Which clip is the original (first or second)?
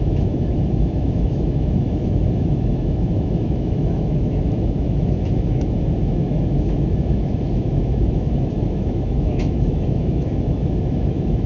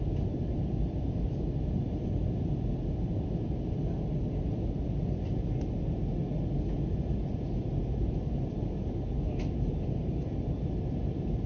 second